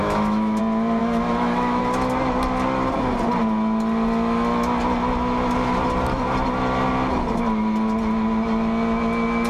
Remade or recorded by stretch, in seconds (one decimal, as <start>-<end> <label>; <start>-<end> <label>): 0.0-0.6 remade; 0.6-1.0 recorded; 1.0-1.8 remade; 1.8-9.5 recorded